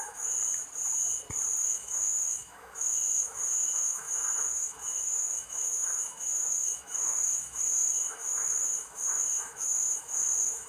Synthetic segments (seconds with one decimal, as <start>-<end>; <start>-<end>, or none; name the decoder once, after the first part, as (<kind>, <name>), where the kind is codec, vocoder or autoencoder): 0.0-0.4 (autoencoder, DAC-VAE); 1.6-10.7